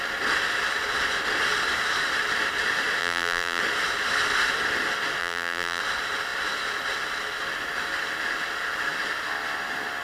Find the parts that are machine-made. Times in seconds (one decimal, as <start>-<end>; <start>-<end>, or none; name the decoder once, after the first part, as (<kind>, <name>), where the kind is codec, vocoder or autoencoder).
3.0-3.6 (vocoder, BigVGAN v2); 5.2-5.8